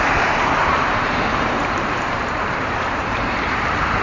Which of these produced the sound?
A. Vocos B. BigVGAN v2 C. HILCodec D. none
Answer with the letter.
B